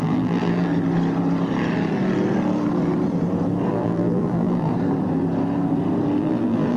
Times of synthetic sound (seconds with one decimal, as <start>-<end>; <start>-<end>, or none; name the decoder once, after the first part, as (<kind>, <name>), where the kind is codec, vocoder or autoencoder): 0.0-0.7 (vocoder, BigVGAN v2); 3.7-4.7; 6.2-6.8